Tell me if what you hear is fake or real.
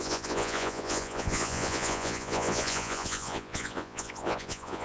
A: fake